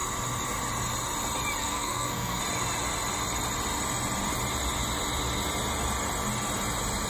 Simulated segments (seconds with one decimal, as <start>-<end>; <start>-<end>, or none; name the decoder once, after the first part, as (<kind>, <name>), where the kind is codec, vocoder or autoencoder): 1.6-2.4 (codec, SNAC)